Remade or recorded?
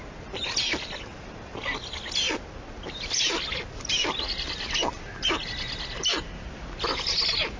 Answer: recorded